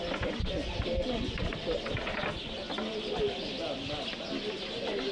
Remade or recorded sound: recorded